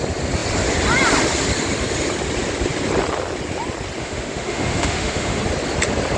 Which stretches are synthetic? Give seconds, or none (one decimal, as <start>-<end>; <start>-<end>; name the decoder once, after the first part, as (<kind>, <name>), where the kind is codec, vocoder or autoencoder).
4.0-5.4 (autoencoder, DAC-VAE)